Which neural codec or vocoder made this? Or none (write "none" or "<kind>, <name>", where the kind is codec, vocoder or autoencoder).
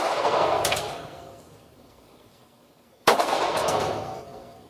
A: codec, SNAC